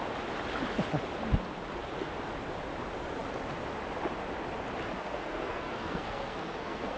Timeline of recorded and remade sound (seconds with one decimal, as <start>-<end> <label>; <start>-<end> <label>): 0.0-5.0 recorded; 5.0-7.0 remade